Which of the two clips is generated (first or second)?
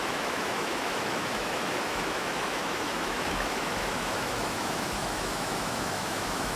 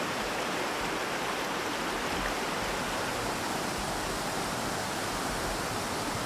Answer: first